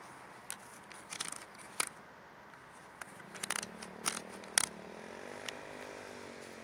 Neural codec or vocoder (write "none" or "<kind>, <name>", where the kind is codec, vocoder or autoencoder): none